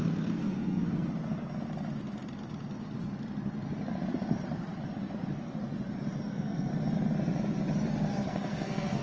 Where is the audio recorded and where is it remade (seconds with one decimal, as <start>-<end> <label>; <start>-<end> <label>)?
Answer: 0.0-1.1 remade; 1.1-6.3 recorded; 6.3-6.7 remade; 6.7-8.1 recorded; 8.1-9.0 remade